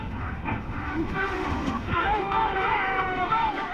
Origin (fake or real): fake